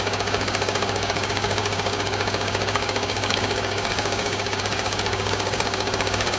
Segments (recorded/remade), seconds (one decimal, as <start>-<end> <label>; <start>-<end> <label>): 0.0-6.4 remade